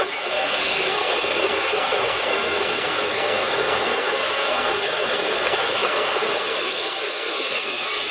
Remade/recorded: remade